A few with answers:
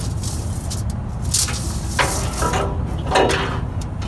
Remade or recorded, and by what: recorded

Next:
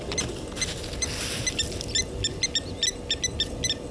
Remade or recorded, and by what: recorded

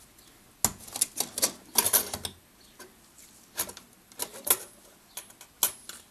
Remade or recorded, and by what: recorded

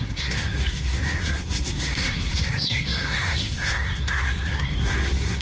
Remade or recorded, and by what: remade, codec, SNAC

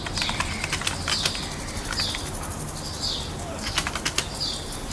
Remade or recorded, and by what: recorded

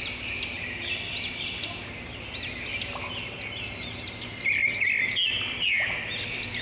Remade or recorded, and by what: recorded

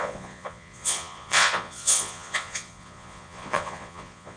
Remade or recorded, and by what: remade, vocoder, Vocos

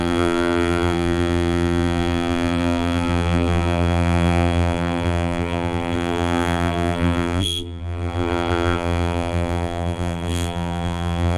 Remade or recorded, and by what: remade, vocoder, BigVGAN v2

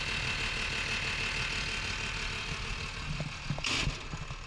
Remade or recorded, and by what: recorded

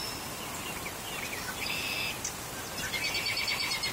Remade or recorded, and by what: recorded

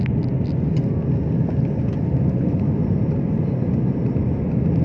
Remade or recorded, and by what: recorded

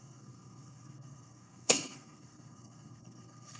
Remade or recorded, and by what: remade, codec, SNAC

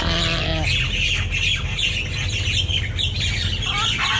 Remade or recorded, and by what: recorded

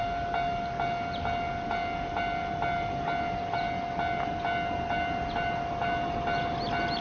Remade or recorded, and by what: recorded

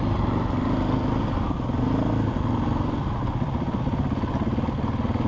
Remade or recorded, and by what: recorded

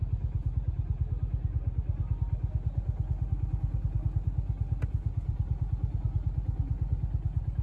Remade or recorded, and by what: recorded